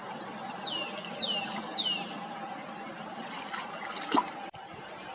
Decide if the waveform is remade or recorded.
recorded